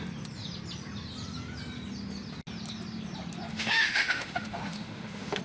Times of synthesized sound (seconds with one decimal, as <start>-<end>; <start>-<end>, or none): 3.5-5.4